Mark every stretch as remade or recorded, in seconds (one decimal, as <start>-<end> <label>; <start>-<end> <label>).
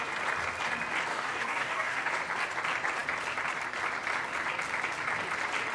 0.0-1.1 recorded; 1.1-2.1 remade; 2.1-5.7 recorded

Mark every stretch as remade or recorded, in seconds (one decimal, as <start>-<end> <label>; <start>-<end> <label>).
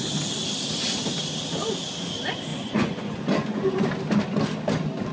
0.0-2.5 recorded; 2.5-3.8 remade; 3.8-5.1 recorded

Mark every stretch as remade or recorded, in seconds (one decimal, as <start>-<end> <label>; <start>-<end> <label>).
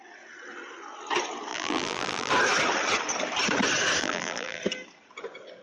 0.0-1.5 recorded; 1.5-2.3 remade; 2.3-4.0 recorded; 4.0-4.6 remade; 4.6-5.6 recorded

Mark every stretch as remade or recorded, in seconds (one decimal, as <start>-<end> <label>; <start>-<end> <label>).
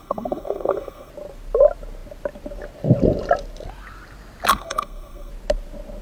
0.0-1.1 remade; 1.1-4.5 recorded; 4.5-5.3 remade; 5.3-6.0 recorded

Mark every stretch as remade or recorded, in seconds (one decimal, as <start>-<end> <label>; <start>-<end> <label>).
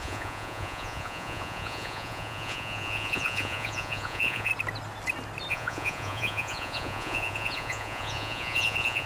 0.0-4.5 remade; 4.5-5.5 recorded; 5.5-9.1 remade